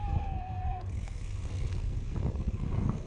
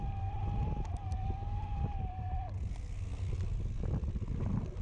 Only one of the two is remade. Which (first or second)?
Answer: first